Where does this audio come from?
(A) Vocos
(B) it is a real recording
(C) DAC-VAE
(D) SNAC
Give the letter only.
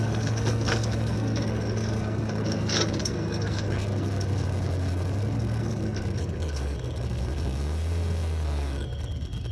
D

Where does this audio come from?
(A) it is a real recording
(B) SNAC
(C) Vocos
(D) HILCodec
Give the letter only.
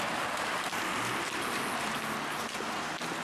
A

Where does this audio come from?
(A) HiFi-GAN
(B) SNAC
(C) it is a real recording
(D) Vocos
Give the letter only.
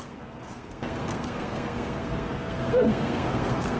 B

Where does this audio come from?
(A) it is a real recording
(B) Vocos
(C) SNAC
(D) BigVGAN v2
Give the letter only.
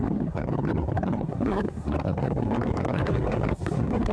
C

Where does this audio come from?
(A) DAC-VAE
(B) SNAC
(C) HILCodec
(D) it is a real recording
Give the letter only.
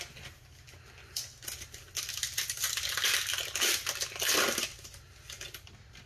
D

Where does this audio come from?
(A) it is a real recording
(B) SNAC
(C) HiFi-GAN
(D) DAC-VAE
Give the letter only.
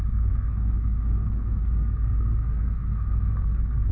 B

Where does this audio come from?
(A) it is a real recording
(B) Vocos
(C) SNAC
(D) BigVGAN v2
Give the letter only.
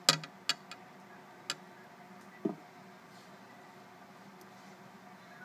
A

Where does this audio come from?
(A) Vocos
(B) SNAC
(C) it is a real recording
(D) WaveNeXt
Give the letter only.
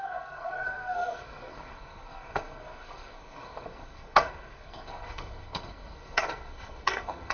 B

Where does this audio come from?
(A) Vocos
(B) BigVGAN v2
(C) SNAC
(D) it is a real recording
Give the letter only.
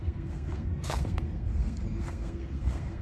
C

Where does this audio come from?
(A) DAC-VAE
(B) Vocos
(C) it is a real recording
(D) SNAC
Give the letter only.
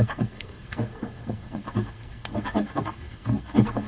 D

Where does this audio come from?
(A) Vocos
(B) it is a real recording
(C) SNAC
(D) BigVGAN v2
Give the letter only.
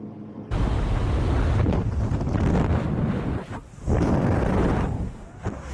B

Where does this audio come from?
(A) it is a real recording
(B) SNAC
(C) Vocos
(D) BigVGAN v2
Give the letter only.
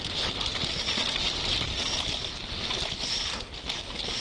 A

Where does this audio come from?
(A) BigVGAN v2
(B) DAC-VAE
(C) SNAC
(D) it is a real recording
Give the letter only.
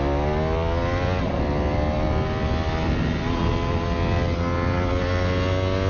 D